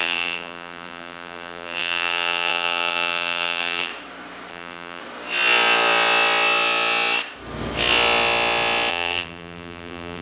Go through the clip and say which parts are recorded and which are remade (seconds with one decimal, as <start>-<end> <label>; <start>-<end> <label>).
0.0-3.9 remade; 3.9-4.5 recorded; 4.5-5.0 remade; 5.0-8.9 recorded; 8.9-10.2 remade